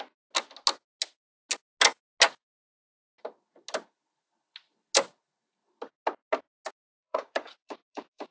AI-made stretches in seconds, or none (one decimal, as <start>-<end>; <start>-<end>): 7.0-8.3